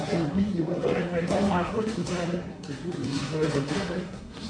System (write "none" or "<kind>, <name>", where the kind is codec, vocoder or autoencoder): codec, SNAC